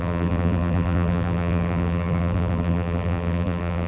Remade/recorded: remade